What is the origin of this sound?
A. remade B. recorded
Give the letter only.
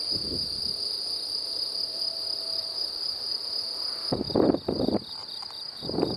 B